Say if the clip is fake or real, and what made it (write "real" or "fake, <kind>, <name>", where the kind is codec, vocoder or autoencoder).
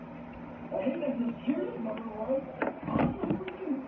real